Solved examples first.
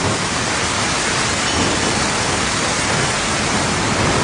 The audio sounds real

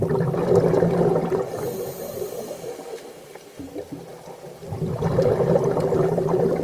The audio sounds real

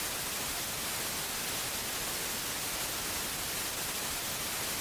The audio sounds real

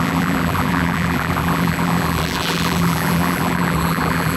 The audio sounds fake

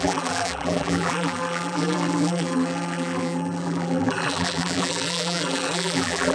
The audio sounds fake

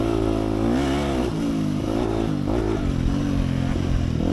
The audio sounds real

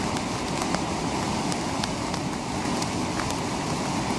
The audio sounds real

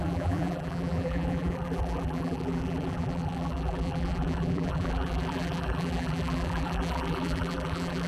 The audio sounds fake